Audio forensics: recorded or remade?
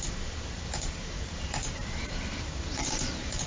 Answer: remade